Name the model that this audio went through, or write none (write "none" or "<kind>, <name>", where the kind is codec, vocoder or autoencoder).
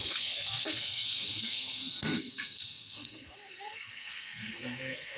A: codec, SNAC